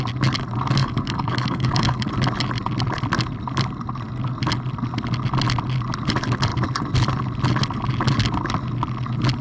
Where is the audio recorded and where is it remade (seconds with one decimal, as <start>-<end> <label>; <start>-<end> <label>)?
0.0-0.8 recorded; 0.8-2.1 remade; 2.1-9.4 recorded